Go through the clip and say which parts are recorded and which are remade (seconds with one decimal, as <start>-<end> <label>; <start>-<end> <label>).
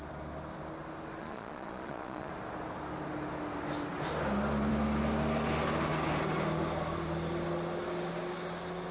0.0-1.2 recorded; 1.2-2.3 remade; 2.3-8.9 recorded